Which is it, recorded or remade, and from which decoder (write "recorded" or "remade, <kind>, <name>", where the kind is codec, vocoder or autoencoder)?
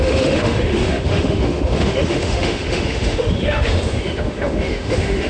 remade, autoencoder, DAC-VAE